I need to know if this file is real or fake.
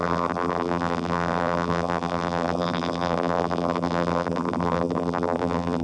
fake